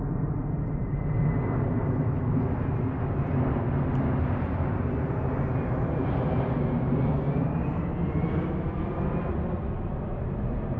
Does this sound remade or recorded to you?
recorded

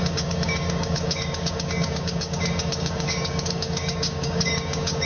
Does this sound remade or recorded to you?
remade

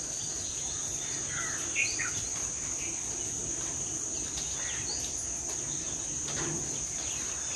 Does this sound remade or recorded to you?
recorded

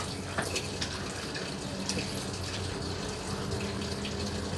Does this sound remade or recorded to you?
recorded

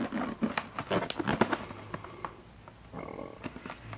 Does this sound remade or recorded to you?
recorded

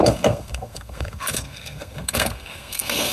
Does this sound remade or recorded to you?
remade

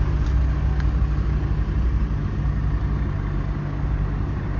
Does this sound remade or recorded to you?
recorded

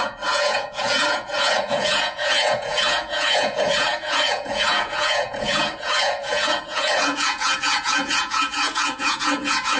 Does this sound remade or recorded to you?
remade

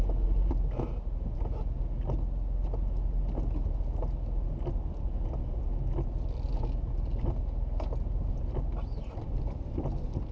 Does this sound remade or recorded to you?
recorded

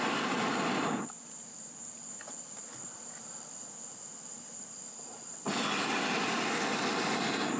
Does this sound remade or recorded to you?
recorded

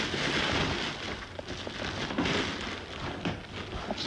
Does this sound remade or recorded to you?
recorded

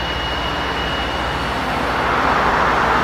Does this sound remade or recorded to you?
recorded